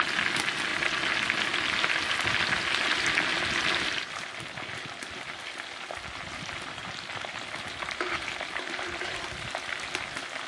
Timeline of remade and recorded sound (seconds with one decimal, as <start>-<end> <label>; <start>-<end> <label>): 0.0-10.5 recorded